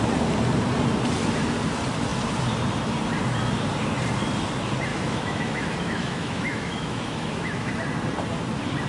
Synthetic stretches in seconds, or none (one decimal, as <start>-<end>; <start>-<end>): 4.9-7.7

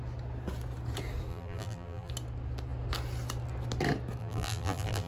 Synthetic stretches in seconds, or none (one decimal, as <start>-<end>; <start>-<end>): 1.3-2.1; 4.2-5.1

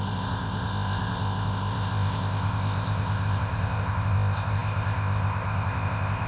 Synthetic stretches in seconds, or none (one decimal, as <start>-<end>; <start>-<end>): 0.0-6.3

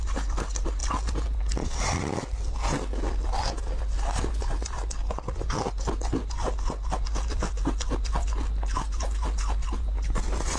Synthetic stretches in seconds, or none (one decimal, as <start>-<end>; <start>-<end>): none

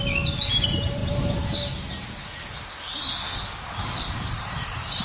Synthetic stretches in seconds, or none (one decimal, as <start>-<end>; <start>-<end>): none

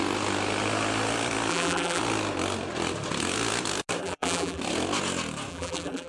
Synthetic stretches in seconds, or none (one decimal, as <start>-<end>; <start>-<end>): 1.5-2.0; 4.0-4.6; 5.5-6.1

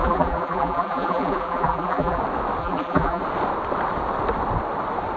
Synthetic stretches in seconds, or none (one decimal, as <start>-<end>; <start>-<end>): 0.0-2.2; 2.6-3.2

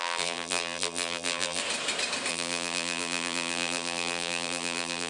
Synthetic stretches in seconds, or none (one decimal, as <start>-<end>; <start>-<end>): 0.0-1.6; 2.3-5.1